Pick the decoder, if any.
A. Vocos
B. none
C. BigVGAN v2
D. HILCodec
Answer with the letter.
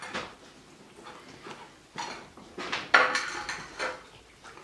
B